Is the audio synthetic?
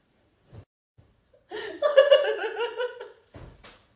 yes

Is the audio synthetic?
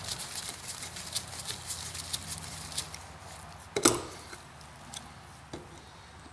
no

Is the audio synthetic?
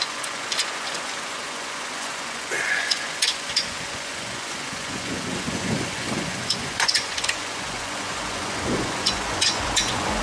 yes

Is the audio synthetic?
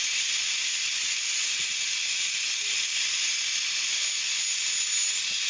no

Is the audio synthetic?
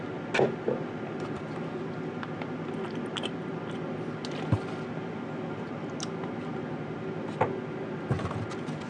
no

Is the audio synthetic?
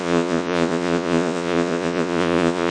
yes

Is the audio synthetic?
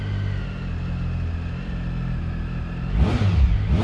no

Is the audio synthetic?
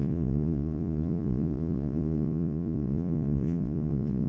yes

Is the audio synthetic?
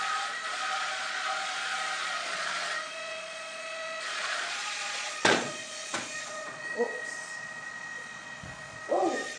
yes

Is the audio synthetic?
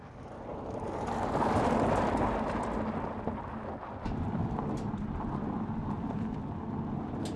no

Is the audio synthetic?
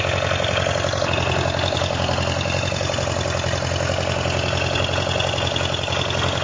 no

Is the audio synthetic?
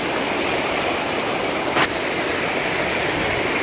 no